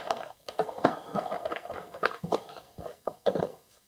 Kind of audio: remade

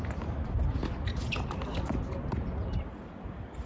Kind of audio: recorded